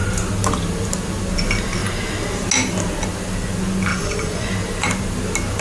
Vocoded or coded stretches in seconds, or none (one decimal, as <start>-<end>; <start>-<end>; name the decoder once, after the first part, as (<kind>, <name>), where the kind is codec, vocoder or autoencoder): 3.9-4.5 (vocoder, Vocos)